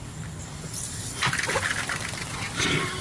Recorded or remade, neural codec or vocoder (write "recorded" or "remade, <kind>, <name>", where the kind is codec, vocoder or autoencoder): recorded